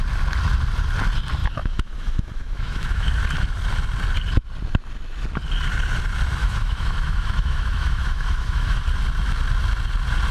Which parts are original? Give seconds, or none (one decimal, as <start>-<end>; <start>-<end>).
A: 0.0-1.4; 3.1-6.4; 8.8-10.3